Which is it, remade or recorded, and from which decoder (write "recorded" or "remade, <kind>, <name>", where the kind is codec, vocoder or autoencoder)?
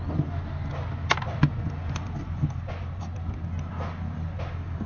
recorded